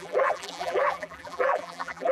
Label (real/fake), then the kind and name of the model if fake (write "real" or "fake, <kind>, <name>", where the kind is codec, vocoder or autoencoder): fake, vocoder, BigVGAN v2